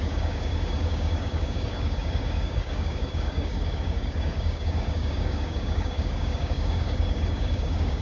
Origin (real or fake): fake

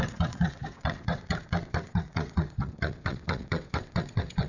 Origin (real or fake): fake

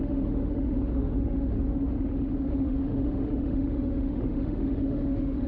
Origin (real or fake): fake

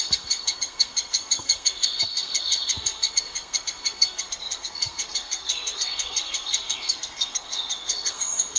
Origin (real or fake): fake